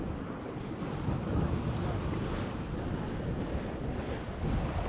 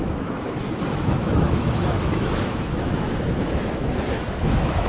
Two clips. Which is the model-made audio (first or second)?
second